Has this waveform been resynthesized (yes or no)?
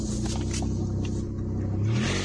no